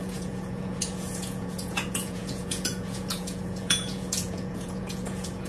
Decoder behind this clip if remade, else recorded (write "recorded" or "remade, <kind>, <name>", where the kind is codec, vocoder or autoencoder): remade, vocoder, Vocos